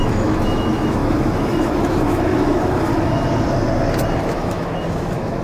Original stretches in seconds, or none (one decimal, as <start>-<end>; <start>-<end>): 2.9-4.2

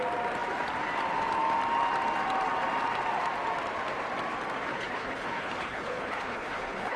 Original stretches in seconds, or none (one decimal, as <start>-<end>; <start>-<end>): 0.0-4.7

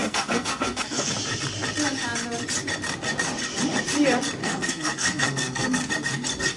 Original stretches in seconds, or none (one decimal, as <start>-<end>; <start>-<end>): 1.1-4.4; 5.9-6.6